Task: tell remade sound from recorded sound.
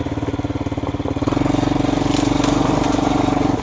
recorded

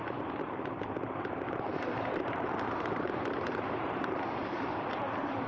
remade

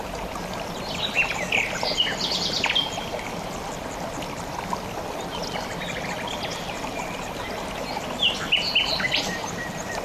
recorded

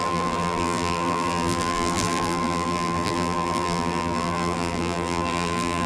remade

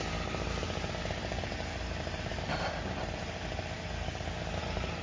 remade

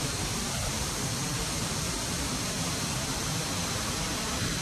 remade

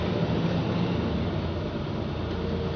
recorded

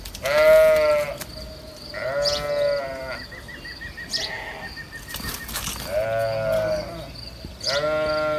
recorded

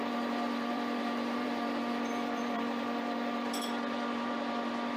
remade